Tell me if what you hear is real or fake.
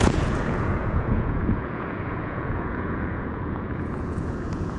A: fake